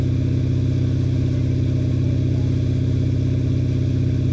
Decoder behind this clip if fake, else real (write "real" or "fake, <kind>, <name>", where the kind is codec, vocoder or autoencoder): real